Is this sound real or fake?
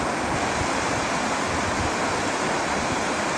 real